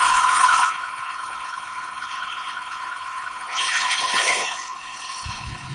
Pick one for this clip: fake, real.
fake